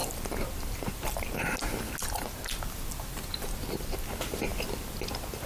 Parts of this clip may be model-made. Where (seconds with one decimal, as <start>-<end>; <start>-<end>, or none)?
none